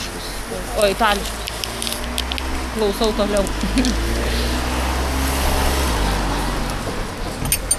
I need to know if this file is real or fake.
real